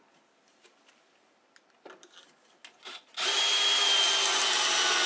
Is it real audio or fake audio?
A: real